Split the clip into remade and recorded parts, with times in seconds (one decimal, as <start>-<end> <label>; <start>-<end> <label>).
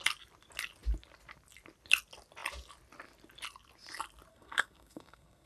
0.0-4.3 recorded; 4.3-5.5 remade